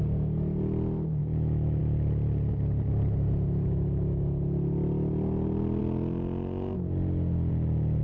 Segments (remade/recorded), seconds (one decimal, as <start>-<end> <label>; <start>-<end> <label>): 0.0-1.2 recorded; 1.2-1.8 remade; 1.8-8.0 recorded

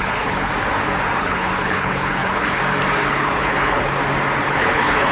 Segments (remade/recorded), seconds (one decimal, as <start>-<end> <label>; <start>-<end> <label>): 0.0-0.5 remade; 0.5-1.2 recorded; 1.2-2.6 remade; 2.6-3.1 recorded; 3.1-4.0 remade; 4.0-4.5 recorded; 4.5-5.1 remade